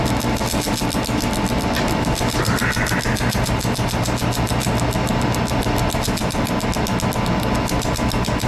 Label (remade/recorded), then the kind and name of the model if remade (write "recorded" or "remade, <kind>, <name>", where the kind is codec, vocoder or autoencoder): recorded